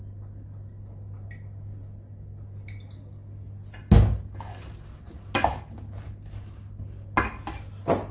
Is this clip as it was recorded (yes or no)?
yes